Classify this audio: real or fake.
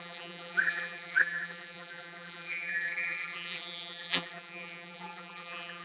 fake